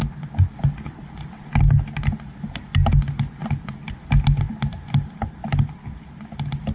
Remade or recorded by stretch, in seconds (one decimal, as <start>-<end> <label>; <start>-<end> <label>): 0.0-3.4 recorded; 3.4-4.0 remade; 4.0-4.7 recorded; 4.7-5.3 remade; 5.3-6.7 recorded